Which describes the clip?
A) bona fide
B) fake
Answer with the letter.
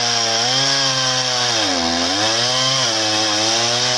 A